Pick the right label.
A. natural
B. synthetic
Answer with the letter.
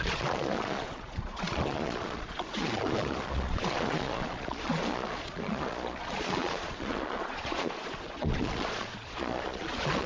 B